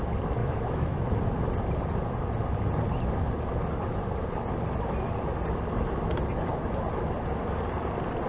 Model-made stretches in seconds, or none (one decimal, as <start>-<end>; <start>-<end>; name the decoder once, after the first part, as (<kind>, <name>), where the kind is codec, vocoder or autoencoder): 0.4-1.2 (autoencoder, DAC-VAE)